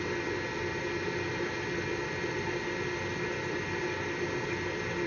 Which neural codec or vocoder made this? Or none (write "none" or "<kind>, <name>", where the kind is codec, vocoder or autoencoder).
none